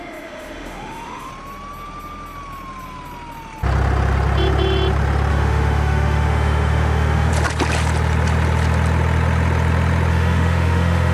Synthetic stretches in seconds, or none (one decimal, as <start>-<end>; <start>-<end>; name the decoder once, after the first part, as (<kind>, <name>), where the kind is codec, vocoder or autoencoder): 0.0-1.3 (autoencoder, DAC-VAE); 5.3-7.3; 10.1-11.1